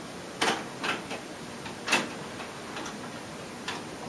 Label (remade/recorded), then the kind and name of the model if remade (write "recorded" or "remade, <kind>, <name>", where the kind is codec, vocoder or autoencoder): recorded